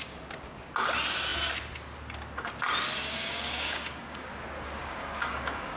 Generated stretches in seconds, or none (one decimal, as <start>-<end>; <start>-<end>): 3.0-4.3; 4.8-5.8